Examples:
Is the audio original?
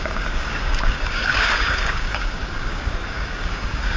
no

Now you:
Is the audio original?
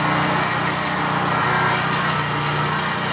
yes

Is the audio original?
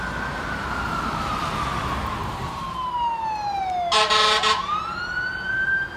yes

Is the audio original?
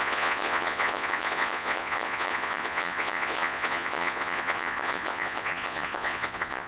no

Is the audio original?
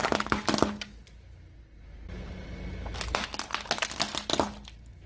yes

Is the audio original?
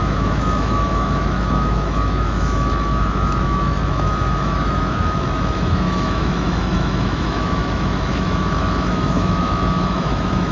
no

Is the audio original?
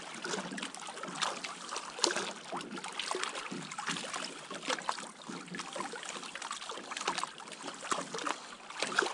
yes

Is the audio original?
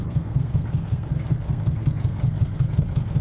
no